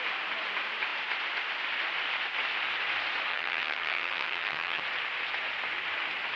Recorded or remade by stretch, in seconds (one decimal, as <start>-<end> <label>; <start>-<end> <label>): 0.0-3.3 recorded; 3.3-4.8 remade; 4.8-6.4 recorded